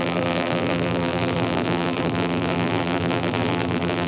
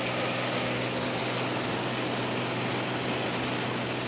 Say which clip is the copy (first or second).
first